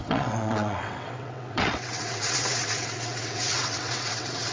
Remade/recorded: remade